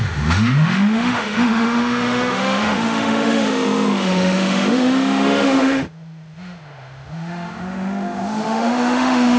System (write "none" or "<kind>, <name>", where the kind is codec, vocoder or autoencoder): autoencoder, DAC-VAE